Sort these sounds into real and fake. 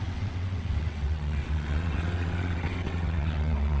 fake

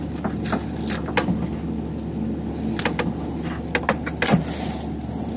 real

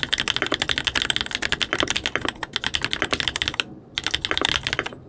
real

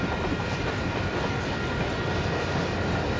real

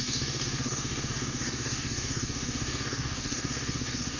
fake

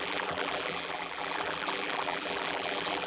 fake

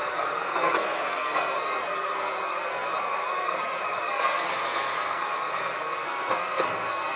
fake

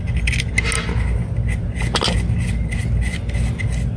real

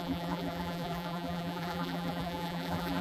fake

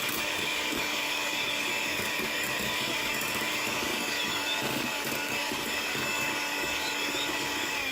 fake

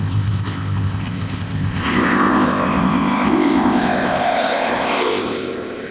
fake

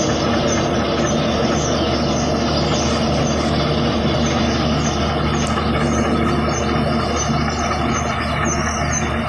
real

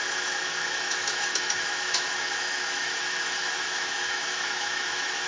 fake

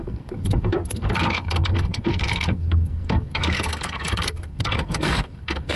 fake